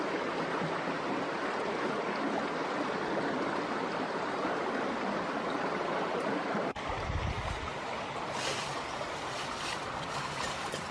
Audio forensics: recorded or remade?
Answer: recorded